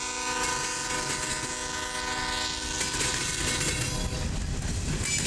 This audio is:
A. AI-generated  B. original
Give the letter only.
B